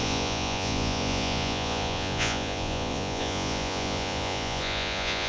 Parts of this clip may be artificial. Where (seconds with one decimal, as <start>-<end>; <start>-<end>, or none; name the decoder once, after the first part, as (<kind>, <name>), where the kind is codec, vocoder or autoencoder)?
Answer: 0.0-5.3 (vocoder, Vocos)